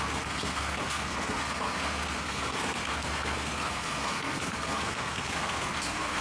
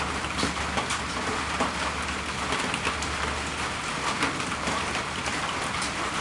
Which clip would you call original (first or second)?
second